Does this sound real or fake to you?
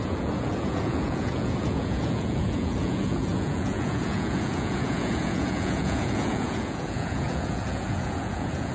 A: fake